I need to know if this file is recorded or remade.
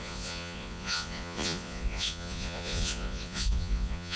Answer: remade